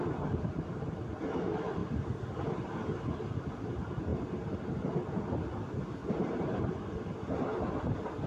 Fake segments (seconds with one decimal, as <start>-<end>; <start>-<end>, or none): 0.5-1.1; 6.0-6.9